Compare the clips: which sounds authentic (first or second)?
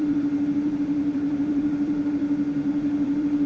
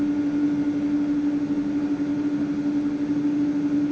second